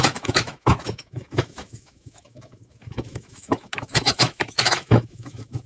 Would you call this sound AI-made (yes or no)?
yes